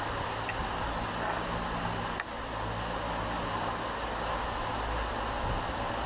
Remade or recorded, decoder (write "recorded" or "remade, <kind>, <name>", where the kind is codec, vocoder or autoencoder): recorded